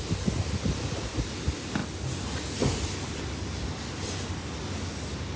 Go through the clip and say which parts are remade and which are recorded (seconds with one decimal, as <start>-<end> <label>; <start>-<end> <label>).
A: 0.0-5.4 recorded